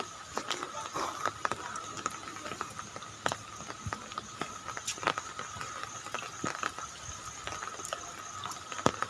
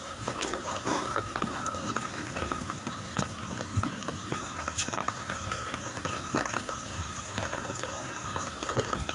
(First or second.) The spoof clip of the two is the second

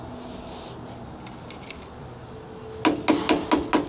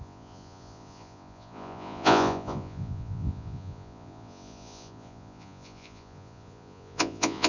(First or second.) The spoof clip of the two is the second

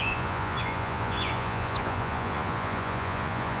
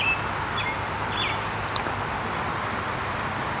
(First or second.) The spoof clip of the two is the first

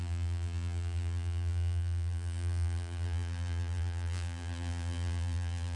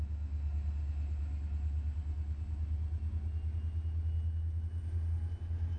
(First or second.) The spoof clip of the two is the first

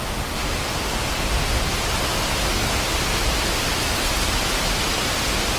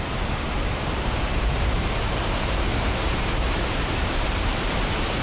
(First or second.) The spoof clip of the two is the second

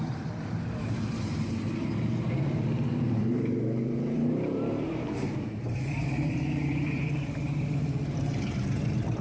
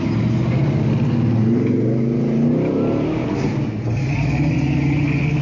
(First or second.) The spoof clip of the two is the first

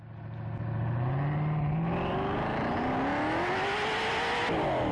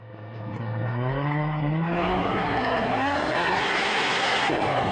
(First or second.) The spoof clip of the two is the second